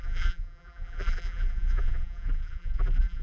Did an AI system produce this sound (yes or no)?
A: yes